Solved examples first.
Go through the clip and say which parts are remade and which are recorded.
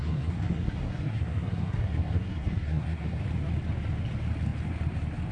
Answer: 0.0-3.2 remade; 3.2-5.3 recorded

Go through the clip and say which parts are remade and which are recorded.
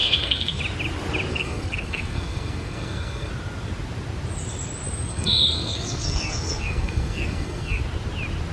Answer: 0.0-0.6 remade; 0.6-1.3 recorded; 1.3-3.3 remade; 3.3-5.1 recorded; 5.1-7.8 remade; 7.8-8.5 recorded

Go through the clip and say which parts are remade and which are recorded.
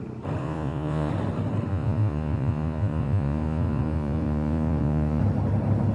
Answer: 0.0-0.4 recorded; 0.4-1.1 remade; 1.1-1.7 recorded; 1.7-5.2 remade; 5.2-5.9 recorded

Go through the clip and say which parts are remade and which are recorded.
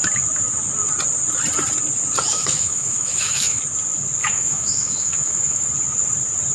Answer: 0.0-2.3 recorded; 2.3-3.6 remade; 3.6-4.2 recorded; 4.2-5.7 remade; 5.7-6.5 recorded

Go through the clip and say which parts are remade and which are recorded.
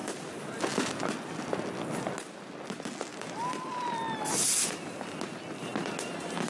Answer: 0.0-0.9 remade; 0.9-3.1 recorded; 3.1-4.6 remade; 4.6-6.5 recorded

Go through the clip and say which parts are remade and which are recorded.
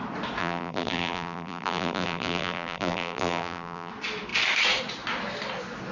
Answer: 0.0-0.4 recorded; 0.4-3.9 remade; 3.9-5.9 recorded